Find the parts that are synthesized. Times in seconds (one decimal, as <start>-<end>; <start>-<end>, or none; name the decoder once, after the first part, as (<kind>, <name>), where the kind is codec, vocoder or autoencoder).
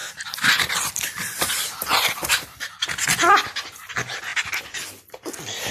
none